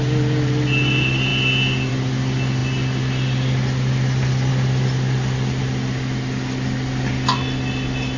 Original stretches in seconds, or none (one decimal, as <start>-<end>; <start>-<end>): 0.0-8.2